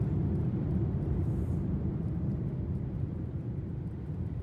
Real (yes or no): no